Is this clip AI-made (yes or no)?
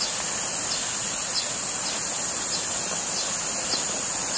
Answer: no